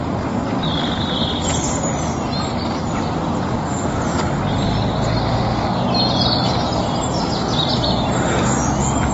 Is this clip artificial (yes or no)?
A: no